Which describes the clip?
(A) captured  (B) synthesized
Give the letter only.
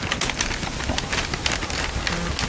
A